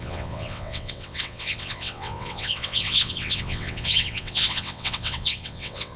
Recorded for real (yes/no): no